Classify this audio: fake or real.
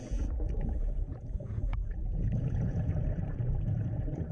fake